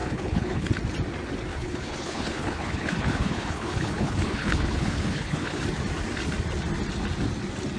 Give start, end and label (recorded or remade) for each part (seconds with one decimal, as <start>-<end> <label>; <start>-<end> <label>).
0.0-0.7 remade; 0.7-1.5 recorded; 1.5-5.6 remade; 5.6-7.8 recorded